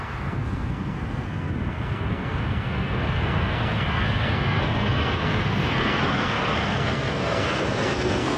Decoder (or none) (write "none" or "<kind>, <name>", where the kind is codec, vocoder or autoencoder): codec, SNAC